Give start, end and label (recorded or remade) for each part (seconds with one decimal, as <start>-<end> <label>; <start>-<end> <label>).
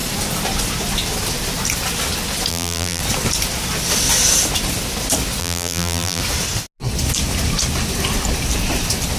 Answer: 0.0-2.5 recorded; 2.5-3.0 remade; 3.0-5.4 recorded; 5.4-6.2 remade; 6.2-9.2 recorded